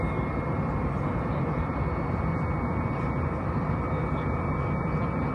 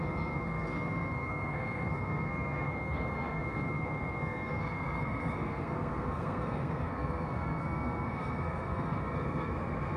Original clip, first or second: first